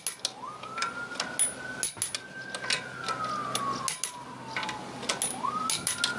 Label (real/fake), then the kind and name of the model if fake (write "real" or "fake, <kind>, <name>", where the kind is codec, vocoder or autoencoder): real